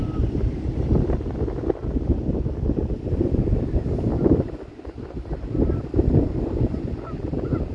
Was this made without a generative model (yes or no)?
yes